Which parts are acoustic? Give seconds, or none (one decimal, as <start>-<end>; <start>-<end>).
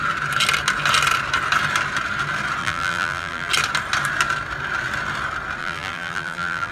0.0-2.6; 3.5-5.6